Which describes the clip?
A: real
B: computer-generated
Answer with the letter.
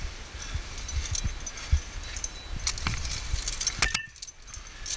A